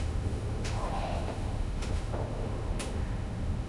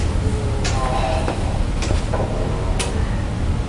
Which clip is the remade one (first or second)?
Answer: first